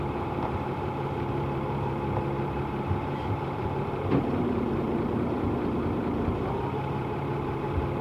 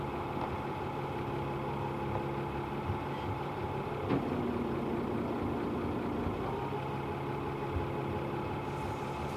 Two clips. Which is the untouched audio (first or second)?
second